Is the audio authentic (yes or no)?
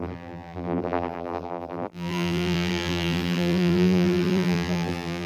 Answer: no